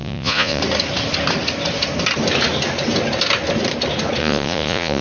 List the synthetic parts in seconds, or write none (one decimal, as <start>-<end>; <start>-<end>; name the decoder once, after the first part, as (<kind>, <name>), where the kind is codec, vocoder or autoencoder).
0.0-0.6 (vocoder, Vocos); 4.2-5.0